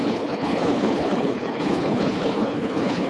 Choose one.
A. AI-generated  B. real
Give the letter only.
A